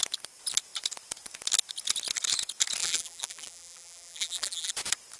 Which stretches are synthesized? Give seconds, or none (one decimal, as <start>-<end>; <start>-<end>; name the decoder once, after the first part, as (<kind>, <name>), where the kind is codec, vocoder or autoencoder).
2.8-4.7 (vocoder, BigVGAN v2)